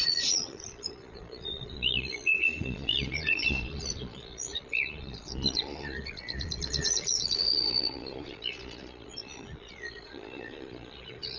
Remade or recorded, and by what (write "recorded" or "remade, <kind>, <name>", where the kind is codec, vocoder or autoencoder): remade, vocoder, Vocos